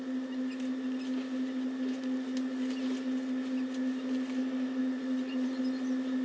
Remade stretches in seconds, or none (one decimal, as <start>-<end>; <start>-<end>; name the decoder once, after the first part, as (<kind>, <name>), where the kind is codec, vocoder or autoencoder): 4.8-5.6 (vocoder, Vocos)